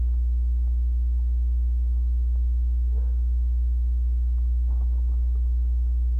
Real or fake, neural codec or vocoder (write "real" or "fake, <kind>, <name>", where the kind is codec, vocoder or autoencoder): real